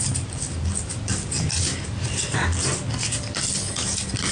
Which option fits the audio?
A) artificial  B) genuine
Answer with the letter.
B